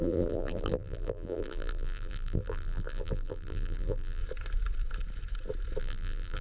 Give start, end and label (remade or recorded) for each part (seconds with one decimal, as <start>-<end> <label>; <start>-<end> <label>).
0.0-4.2 remade; 4.2-5.8 recorded; 5.8-6.4 remade